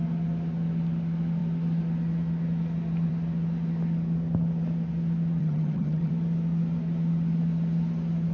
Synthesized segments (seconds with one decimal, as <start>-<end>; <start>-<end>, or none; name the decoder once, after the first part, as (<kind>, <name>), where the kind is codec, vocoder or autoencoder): 5.4-6.1 (vocoder, HiFi-GAN)